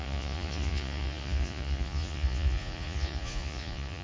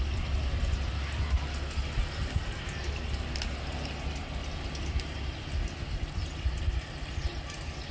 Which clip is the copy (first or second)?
first